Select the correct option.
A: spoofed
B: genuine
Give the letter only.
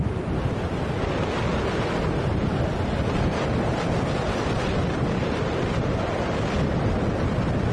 B